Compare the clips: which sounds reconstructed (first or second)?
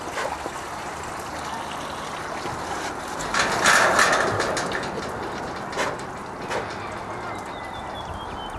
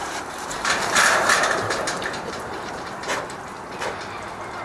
second